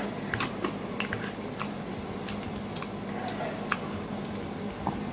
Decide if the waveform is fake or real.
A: real